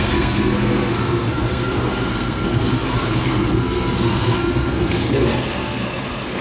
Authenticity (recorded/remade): remade